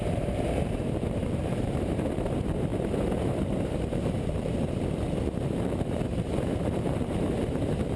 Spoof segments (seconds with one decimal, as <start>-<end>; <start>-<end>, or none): 0.0-4.5; 5.2-8.0